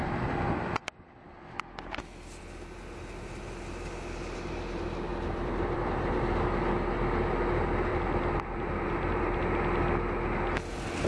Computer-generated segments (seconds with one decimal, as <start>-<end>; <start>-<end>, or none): 5.1-6.2; 7.9-9.4